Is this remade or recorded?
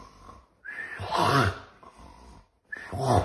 recorded